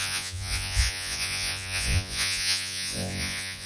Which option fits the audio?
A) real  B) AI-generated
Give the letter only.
B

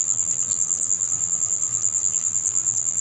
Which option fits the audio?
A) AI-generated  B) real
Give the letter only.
A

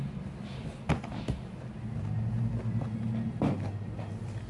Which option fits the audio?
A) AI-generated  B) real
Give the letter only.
B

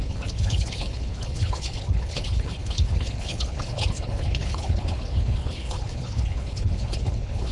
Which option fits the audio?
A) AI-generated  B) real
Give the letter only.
A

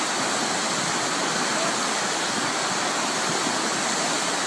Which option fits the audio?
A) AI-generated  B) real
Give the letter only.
B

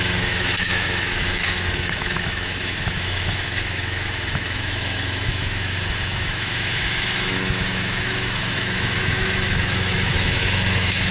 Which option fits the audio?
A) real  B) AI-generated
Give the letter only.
B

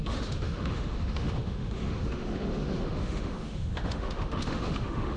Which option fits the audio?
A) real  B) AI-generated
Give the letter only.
B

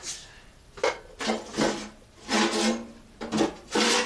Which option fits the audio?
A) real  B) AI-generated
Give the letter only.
A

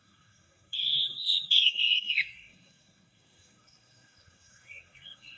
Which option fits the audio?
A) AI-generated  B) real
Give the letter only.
A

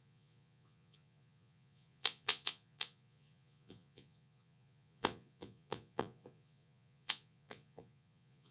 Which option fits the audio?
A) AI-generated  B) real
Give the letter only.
A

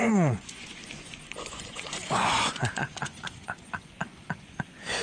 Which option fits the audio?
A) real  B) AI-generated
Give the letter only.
B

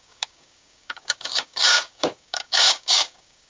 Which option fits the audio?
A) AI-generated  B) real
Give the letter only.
A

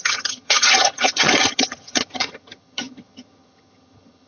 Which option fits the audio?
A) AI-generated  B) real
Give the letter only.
A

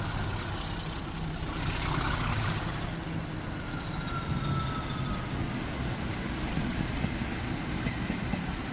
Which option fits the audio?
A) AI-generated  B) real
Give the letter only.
B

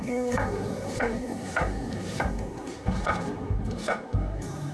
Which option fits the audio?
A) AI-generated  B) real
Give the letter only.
A